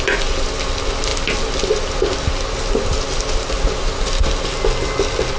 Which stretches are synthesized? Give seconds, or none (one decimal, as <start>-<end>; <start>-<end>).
none